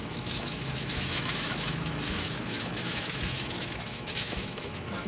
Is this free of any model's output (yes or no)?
no